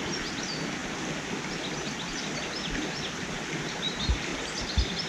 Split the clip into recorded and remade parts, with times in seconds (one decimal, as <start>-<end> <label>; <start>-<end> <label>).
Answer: 0.0-5.1 recorded